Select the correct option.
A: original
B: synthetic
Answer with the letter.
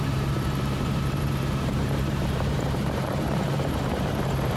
B